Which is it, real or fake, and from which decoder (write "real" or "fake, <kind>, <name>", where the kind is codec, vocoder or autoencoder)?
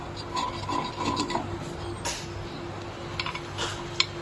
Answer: real